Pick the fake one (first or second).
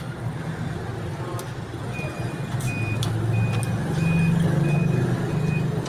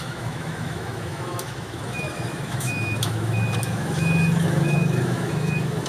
second